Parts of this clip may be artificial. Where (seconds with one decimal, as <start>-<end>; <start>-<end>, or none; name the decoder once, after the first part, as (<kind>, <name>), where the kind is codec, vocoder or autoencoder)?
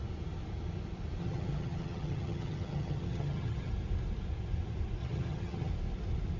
1.2-3.7 (vocoder, HiFi-GAN); 5.0-5.7